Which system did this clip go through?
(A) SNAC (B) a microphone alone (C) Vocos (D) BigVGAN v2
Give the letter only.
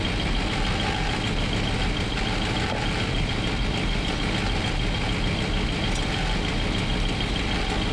B